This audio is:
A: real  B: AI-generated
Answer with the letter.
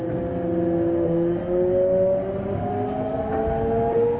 A